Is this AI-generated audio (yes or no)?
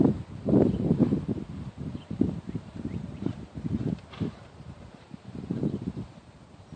yes